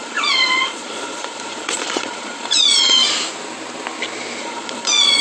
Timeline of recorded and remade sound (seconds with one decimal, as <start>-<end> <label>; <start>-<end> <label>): 0.0-3.0 remade; 3.0-4.4 recorded; 4.4-5.2 remade